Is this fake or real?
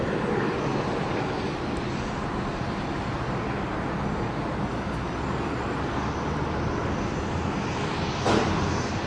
real